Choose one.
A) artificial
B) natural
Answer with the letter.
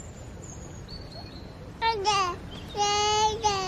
B